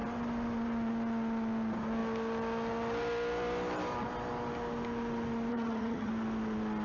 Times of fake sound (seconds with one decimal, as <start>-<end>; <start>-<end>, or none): 5.5-6.1